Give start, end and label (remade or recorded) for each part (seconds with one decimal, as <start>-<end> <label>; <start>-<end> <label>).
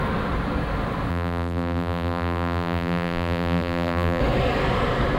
0.0-1.1 recorded; 1.1-4.2 remade; 4.2-5.2 recorded